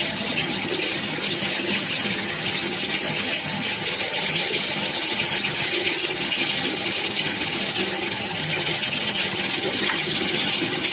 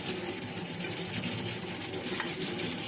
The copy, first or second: first